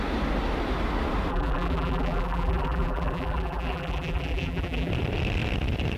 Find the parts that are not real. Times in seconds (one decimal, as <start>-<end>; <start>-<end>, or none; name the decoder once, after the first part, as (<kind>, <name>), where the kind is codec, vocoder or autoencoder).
1.3-4.9 (vocoder, BigVGAN v2)